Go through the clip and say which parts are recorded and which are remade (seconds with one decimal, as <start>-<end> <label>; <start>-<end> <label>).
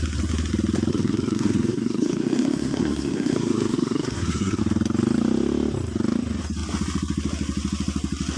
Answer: 0.0-0.9 recorded; 0.9-4.6 remade; 4.6-8.4 recorded